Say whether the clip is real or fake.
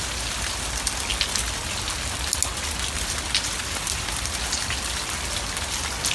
real